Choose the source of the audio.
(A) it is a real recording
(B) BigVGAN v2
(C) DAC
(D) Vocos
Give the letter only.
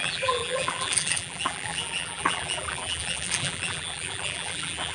B